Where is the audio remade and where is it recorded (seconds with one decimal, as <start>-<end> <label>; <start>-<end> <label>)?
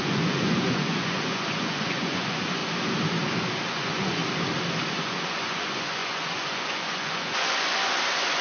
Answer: 0.0-2.6 remade; 2.6-3.7 recorded; 3.7-4.2 remade; 4.2-4.9 recorded; 4.9-8.4 remade